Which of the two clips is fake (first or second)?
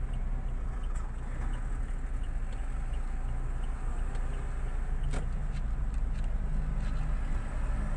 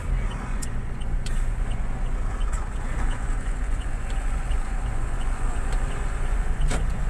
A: second